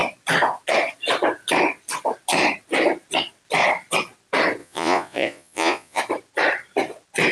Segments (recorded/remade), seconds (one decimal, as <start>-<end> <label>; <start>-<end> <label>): 0.0-4.6 recorded; 4.6-6.0 remade; 6.0-7.3 recorded